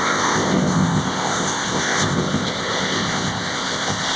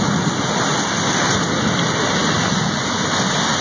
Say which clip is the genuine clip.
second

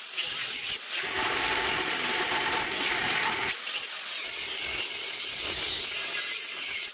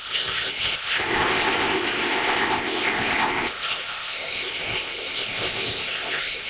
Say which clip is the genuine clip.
first